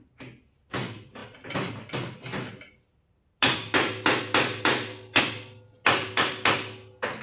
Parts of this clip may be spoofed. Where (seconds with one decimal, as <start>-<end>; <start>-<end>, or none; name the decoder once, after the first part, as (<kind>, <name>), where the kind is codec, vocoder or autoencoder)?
none